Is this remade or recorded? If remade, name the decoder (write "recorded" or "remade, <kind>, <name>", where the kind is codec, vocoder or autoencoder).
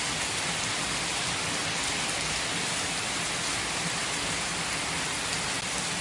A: recorded